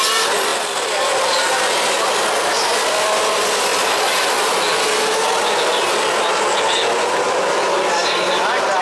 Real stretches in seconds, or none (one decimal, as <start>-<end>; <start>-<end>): 0.0-8.8